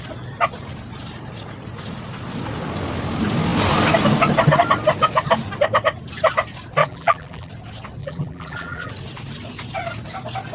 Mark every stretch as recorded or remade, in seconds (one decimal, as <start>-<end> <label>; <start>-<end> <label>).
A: 0.0-6.8 recorded; 6.8-7.5 remade; 7.5-8.0 recorded; 8.0-8.9 remade; 8.9-10.5 recorded